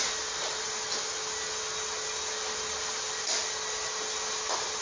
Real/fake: real